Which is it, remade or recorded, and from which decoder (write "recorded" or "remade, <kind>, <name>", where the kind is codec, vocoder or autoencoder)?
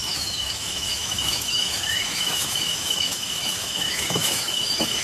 remade, autoencoder, DAC-VAE